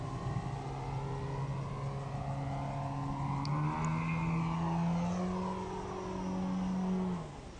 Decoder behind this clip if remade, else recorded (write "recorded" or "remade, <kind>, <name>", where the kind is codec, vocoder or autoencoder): recorded